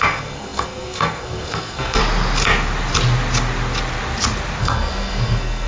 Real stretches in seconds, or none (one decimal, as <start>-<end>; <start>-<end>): 2.0-4.6